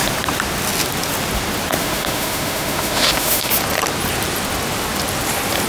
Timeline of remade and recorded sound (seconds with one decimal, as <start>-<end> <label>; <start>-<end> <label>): 0.0-1.8 recorded; 1.8-3.5 remade; 3.5-5.7 recorded